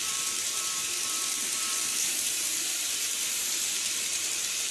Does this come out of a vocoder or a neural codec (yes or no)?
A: yes